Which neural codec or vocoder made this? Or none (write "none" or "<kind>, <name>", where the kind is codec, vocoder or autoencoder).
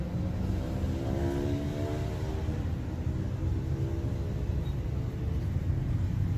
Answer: none